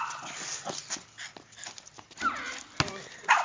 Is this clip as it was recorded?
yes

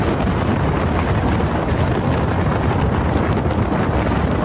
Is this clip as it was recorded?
yes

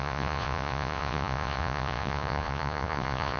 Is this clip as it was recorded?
no